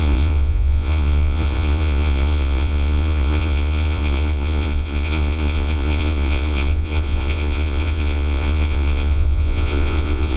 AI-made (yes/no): yes